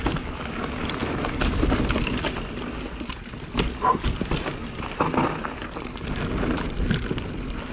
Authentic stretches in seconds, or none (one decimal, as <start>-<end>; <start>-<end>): 0.0-7.7